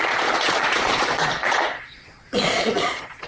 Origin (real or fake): fake